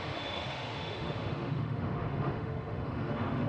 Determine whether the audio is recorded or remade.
remade